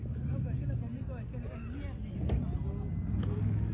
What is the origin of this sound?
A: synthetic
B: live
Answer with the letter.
B